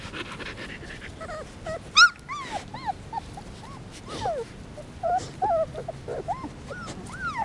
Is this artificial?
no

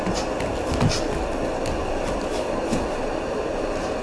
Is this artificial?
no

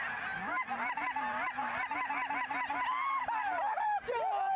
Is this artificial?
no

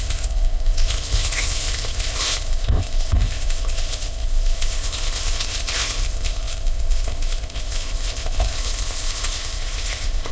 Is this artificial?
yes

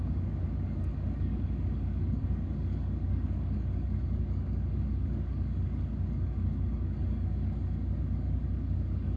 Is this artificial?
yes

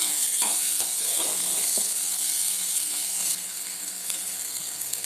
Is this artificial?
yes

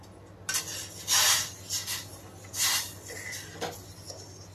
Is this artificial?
no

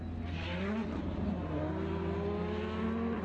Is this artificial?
no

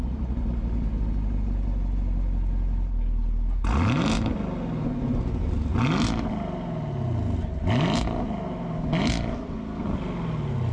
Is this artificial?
no